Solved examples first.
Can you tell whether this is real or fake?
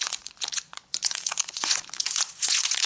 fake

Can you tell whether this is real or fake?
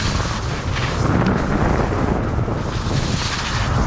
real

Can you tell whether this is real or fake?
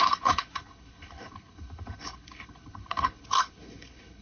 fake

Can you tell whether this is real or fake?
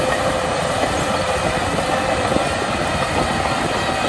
real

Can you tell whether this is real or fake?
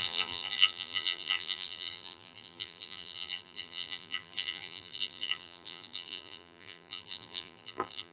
fake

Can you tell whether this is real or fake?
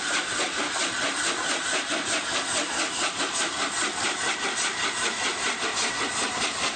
real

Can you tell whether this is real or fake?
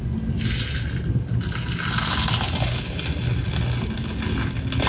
real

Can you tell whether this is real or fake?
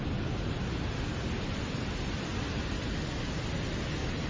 real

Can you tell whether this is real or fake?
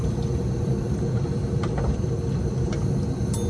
real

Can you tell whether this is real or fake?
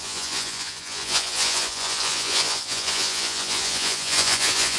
fake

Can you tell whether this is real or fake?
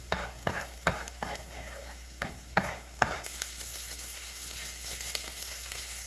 fake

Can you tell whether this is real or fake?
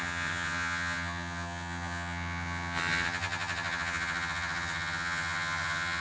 fake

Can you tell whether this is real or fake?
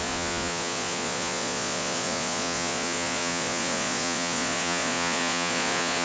fake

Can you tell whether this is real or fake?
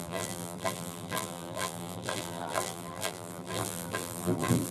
fake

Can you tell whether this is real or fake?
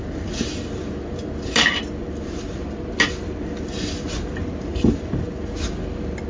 real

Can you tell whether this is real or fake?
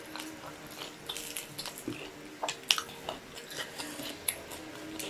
real